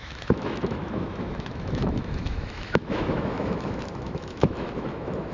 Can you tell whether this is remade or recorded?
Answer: remade